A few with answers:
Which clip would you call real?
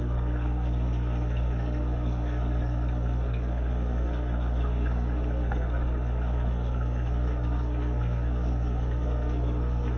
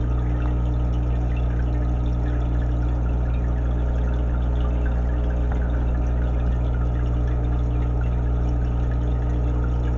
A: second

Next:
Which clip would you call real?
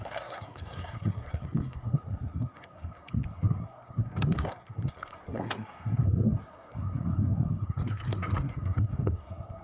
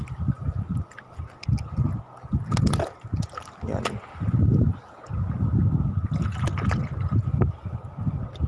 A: second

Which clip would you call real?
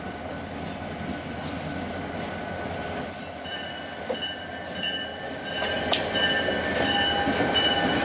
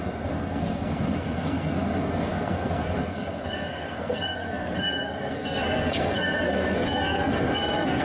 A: first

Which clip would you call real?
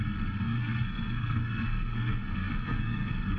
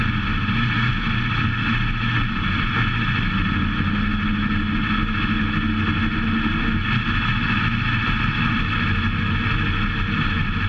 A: second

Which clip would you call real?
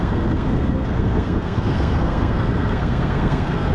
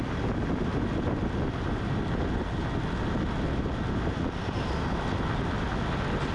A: second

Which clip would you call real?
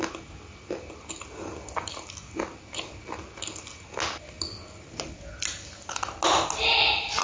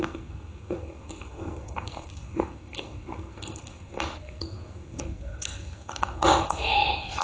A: first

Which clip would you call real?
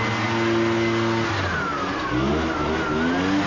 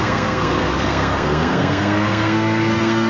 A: first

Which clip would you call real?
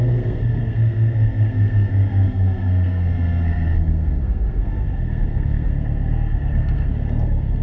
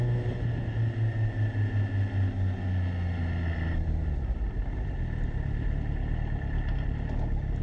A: second